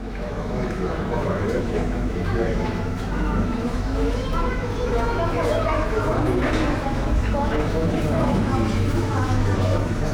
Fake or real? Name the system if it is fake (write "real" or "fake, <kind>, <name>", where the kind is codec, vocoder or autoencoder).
fake, autoencoder, DAC-VAE